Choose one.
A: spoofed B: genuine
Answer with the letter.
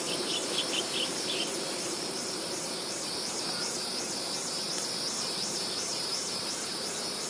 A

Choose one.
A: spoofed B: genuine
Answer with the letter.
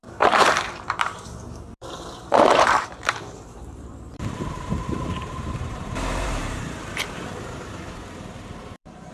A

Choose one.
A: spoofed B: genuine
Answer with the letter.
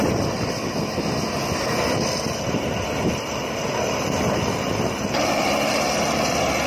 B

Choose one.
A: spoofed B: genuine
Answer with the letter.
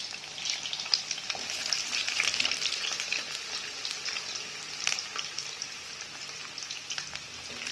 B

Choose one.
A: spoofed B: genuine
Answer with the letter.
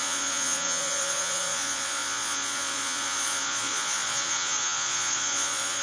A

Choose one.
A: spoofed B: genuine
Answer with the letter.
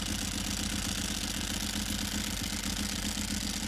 B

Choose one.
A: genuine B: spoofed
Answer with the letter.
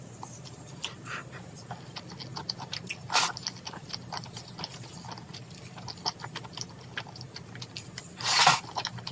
A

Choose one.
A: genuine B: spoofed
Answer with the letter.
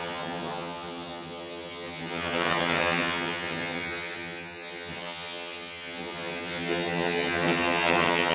B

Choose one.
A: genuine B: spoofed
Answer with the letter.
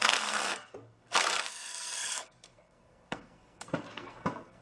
B